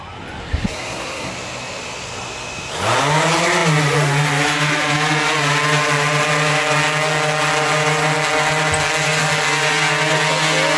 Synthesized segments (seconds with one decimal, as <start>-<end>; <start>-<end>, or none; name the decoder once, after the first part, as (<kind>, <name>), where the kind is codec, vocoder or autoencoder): 0.4-1.3 (codec, SNAC)